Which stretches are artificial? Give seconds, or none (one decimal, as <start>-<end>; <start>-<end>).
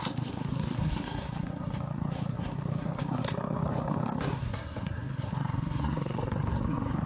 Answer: 0.0-7.1